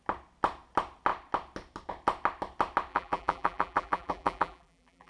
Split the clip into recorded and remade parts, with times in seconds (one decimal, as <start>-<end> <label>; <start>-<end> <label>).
0.0-2.9 recorded; 2.9-5.1 remade